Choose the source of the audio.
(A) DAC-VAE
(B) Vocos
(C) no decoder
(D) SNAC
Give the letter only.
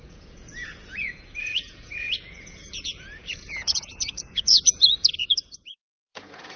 B